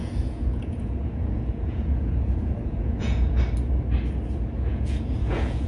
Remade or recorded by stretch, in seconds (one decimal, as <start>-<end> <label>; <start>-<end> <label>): 0.0-3.4 remade; 3.4-4.7 recorded; 4.7-5.7 remade